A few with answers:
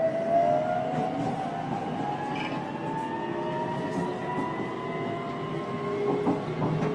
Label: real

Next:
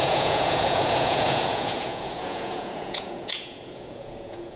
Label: fake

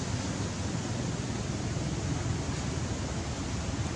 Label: real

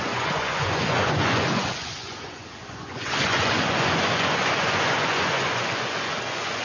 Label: fake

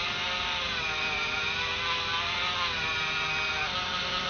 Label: real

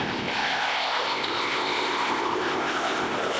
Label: fake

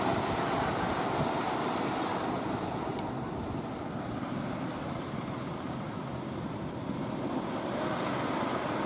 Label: real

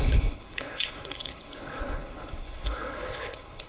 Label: fake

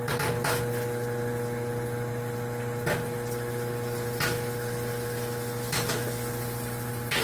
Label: real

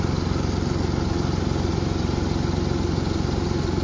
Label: real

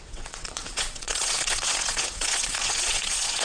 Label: fake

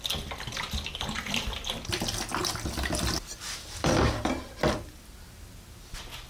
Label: real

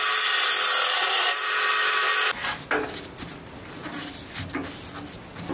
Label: real